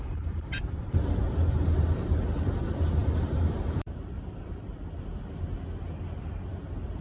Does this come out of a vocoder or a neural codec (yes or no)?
yes